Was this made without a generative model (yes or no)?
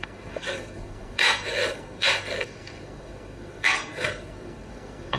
no